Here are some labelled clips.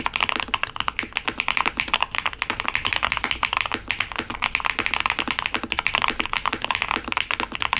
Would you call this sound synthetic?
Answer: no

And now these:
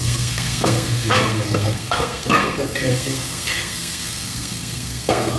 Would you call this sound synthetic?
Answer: yes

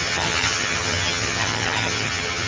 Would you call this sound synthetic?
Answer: yes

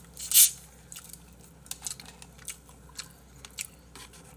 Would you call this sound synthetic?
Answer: no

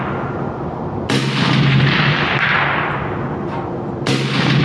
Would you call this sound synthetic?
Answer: no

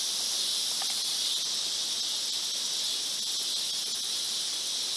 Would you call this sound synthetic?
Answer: no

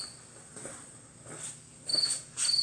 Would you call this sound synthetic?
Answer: no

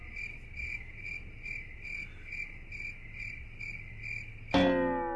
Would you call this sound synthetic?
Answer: no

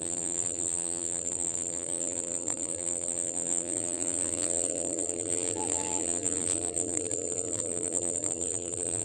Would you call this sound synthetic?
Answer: yes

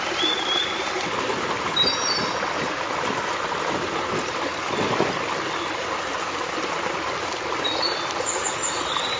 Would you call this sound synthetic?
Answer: no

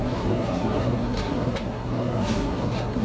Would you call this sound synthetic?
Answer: yes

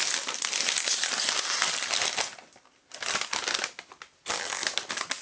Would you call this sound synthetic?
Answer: no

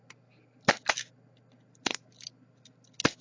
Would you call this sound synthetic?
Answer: no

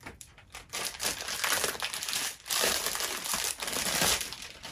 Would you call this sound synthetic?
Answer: no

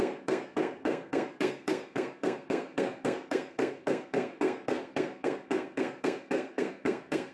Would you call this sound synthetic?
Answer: yes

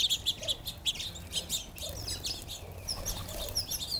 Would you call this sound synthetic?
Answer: no